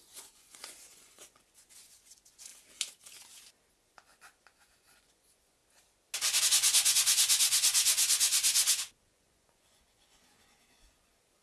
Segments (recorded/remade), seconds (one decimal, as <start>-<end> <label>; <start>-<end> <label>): 0.0-2.5 remade; 2.5-3.7 recorded; 3.7-5.6 remade; 5.6-6.4 recorded; 6.4-8.3 remade; 8.3-9.0 recorded; 9.0-11.4 remade